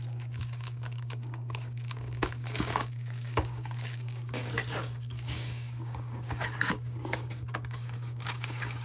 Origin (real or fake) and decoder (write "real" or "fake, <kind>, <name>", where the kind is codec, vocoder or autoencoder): fake, codec, DAC